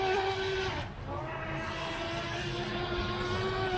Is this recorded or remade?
recorded